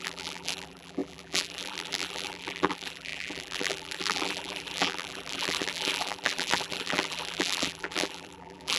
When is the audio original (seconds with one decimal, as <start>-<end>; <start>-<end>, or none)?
none